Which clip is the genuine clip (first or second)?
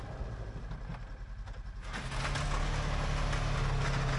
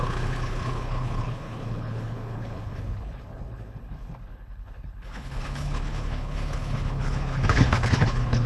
first